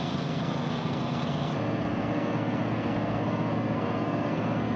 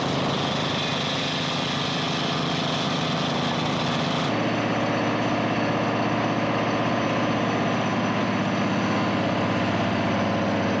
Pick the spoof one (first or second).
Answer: first